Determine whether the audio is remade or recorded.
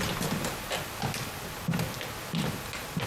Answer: recorded